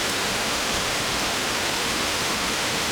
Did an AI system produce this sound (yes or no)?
yes